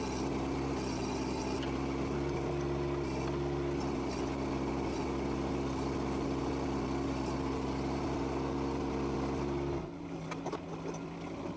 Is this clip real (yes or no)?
yes